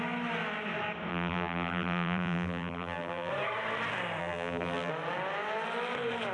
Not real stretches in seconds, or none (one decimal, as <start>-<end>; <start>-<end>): 1.1-3.3; 4.2-4.9